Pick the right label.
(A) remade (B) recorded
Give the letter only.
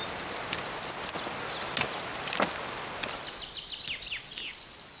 B